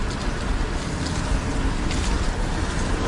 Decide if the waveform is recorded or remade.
recorded